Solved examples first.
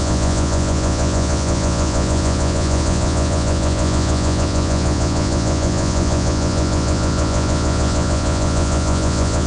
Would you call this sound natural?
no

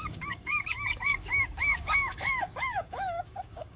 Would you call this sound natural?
no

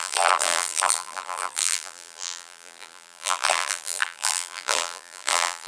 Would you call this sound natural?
no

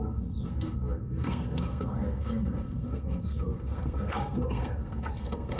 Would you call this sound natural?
no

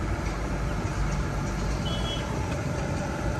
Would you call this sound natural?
no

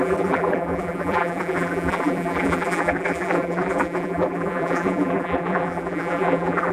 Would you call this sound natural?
no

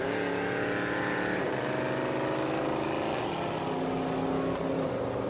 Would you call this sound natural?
yes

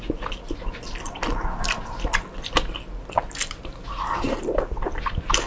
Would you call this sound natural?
yes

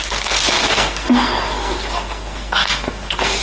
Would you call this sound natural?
no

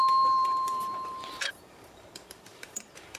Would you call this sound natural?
no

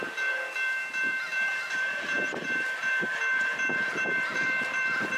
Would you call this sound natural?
no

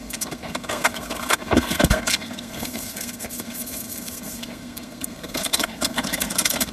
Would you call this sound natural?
no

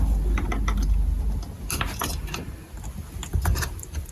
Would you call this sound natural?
yes